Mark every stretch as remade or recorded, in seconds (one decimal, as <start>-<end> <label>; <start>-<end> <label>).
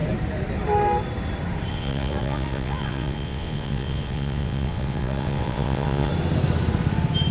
0.0-1.7 recorded; 1.7-6.1 remade; 6.1-7.3 recorded